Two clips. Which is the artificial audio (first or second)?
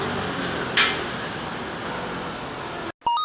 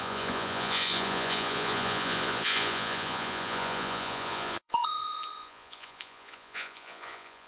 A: second